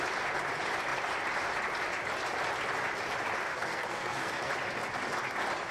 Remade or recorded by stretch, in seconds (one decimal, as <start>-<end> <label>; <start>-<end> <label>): 0.0-3.5 recorded; 3.5-4.5 remade; 4.5-5.7 recorded